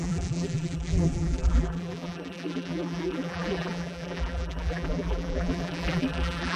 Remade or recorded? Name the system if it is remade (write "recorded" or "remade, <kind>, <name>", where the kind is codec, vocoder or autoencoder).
remade, vocoder, BigVGAN v2